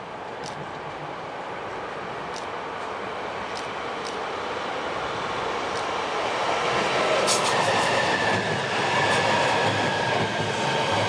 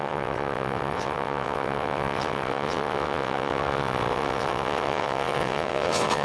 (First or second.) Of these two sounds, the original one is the first